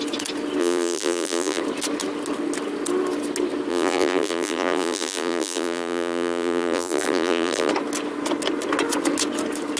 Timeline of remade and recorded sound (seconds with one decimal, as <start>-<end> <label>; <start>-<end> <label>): 0.0-0.6 recorded; 0.6-1.6 remade; 1.6-3.7 recorded; 3.7-7.7 remade; 7.7-9.8 recorded